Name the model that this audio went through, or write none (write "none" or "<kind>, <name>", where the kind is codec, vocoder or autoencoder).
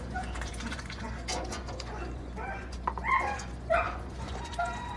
vocoder, Vocos